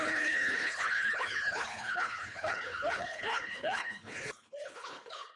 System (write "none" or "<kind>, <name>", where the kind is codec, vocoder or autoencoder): codec, HILCodec